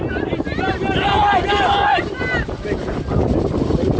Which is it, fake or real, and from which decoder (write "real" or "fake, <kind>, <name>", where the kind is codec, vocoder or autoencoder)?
real